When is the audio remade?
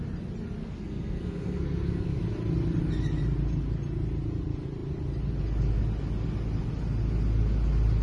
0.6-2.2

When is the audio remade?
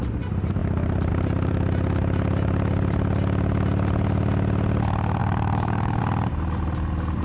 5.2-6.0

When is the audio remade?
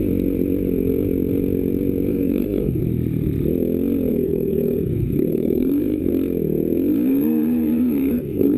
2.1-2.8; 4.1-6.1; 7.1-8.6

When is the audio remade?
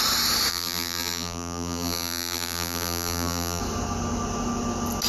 0.5-3.6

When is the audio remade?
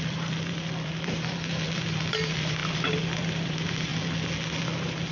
0.0-3.9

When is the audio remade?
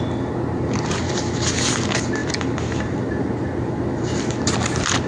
2.2-5.1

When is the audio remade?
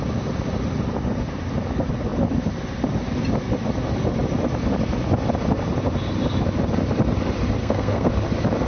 7.6-8.1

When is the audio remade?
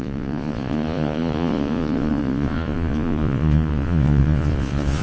0.0-5.0